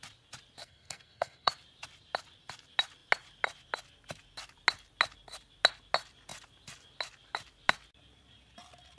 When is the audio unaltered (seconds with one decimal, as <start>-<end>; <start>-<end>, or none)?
0.0-0.6; 1.5-9.0